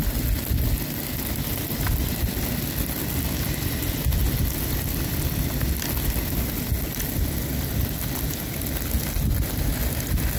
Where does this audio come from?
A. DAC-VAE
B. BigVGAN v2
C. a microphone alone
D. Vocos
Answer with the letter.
C